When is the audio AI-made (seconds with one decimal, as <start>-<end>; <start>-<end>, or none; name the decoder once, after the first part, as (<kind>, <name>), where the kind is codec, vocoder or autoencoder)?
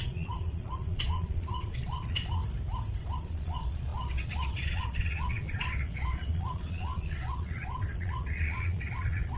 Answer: 0.0-2.4 (vocoder, Vocos); 3.0-9.4